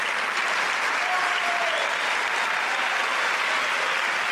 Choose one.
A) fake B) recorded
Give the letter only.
B